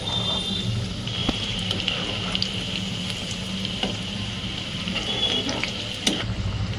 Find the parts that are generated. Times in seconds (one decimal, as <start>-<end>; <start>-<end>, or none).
1.2-1.8; 3.2-6.8